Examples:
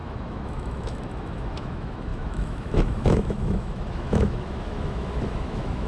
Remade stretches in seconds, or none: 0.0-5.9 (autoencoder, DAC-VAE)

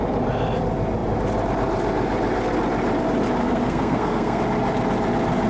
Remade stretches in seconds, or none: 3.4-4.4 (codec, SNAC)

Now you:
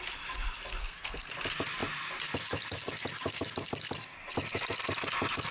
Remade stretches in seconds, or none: 0.8-1.3 (codec, SNAC)